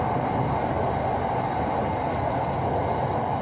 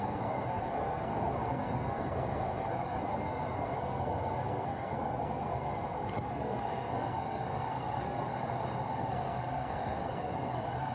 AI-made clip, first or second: second